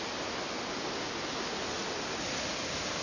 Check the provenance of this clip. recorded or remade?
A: recorded